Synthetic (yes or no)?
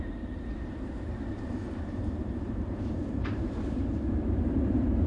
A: yes